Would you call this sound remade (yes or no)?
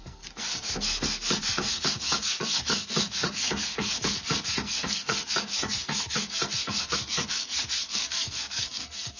yes